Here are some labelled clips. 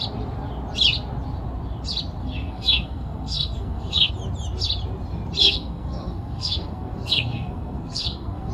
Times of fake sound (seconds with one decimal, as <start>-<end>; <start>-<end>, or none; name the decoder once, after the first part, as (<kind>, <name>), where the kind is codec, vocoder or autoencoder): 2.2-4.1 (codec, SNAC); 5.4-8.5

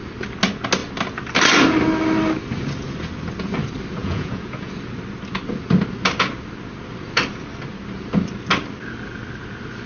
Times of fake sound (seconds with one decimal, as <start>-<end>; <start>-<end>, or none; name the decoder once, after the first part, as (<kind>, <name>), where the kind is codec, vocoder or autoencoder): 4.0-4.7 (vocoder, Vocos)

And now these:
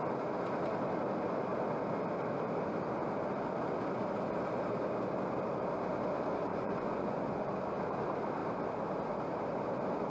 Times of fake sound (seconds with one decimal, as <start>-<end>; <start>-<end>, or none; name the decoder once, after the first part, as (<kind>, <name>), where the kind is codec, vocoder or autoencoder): 6.5-7.5 (vocoder, Vocos)

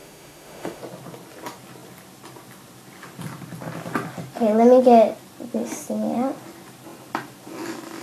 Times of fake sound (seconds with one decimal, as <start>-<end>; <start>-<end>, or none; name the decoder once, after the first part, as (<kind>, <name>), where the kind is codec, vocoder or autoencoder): 0.0-0.8 (autoencoder, DAC-VAE)

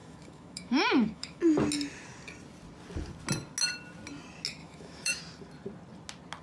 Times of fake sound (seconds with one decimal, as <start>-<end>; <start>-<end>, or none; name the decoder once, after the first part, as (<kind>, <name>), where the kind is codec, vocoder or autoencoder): 0.0-1.4 (autoencoder, DAC-VAE); 4.6-5.2

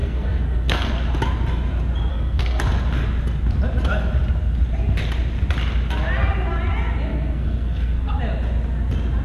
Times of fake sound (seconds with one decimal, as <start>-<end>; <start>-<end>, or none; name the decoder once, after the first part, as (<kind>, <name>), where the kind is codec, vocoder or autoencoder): 0.0-0.9 (codec, SNAC); 2.1-2.6; 7.1-8.2

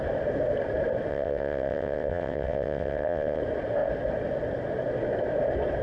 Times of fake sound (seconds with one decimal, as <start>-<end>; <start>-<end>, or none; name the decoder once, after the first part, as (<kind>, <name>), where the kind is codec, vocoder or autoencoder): 1.1-3.4 (vocoder, WaveNeXt)